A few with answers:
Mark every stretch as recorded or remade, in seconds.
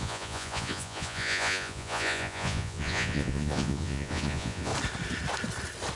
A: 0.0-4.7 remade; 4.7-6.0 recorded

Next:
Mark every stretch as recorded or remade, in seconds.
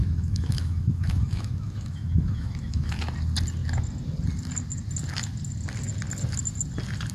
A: 0.0-3.0 remade; 3.0-7.1 recorded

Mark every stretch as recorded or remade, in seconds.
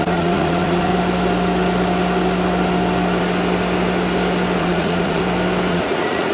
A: 0.0-0.9 remade; 0.9-4.6 recorded; 4.6-5.2 remade; 5.2-5.7 recorded; 5.7-6.3 remade